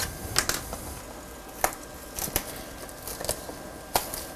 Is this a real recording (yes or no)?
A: yes